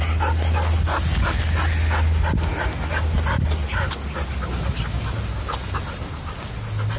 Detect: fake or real real